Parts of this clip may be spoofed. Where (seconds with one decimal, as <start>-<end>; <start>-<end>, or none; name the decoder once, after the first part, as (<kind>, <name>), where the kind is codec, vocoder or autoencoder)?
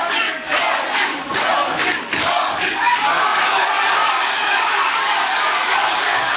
0.0-1.5 (codec, DAC); 2.0-6.4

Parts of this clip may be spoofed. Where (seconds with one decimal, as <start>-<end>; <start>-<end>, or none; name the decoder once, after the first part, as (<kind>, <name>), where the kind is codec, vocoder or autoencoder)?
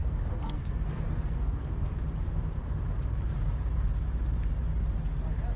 0.0-1.7 (codec, SNAC)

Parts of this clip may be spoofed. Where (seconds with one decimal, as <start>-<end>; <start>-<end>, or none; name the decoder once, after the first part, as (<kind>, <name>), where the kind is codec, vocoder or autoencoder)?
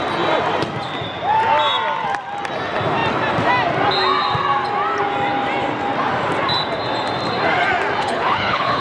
8.0-8.8 (codec, HILCodec)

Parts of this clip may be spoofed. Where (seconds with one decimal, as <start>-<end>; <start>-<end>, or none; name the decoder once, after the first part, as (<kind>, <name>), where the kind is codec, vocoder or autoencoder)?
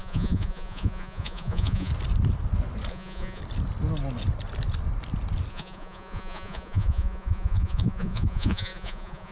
0.0-1.9 (vocoder, Vocos); 2.9-3.4; 5.5-9.3